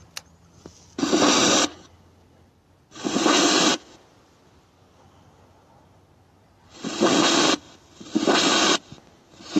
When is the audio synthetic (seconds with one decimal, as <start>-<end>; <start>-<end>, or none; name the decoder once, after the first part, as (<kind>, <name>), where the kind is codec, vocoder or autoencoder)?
none